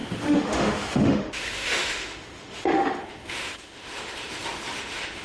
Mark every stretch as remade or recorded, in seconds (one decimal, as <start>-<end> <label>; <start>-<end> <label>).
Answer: 0.0-5.2 remade